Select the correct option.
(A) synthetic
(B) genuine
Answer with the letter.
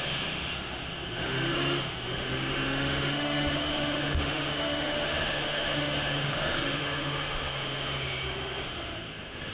A